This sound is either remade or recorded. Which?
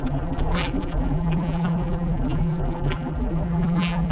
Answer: remade